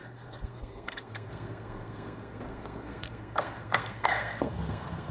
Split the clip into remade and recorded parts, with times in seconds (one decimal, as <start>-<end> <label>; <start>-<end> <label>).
0.0-5.1 remade

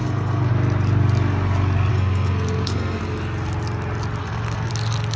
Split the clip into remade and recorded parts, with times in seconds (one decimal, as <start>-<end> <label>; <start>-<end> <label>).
0.0-0.5 remade; 0.5-1.9 recorded; 1.9-3.0 remade; 3.0-4.2 recorded; 4.2-4.7 remade; 4.7-5.2 recorded

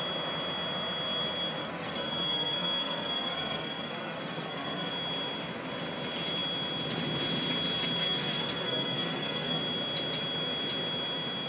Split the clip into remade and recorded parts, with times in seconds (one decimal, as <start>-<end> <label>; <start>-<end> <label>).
0.0-1.6 recorded; 1.6-4.9 remade; 4.9-8.0 recorded; 8.0-9.6 remade; 9.6-11.5 recorded